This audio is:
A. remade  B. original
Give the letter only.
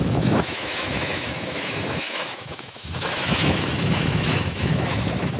A